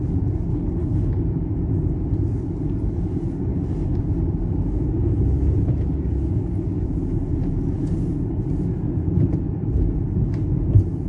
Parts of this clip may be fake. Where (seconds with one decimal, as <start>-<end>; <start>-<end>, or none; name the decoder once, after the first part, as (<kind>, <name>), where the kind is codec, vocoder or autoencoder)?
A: 0.5-1.1 (codec, HILCodec)